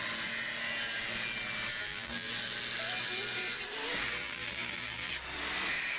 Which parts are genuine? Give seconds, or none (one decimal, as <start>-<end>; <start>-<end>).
0.0-1.8; 2.3-4.2; 5.1-6.0